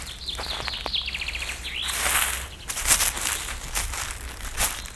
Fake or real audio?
real